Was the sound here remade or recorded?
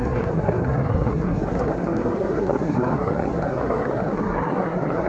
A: remade